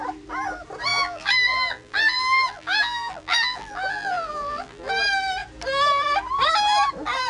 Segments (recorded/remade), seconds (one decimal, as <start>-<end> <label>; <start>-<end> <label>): 0.0-0.9 recorded; 0.9-4.9 remade; 4.9-7.3 recorded